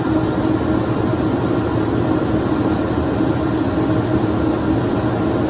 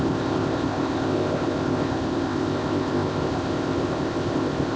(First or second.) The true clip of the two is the first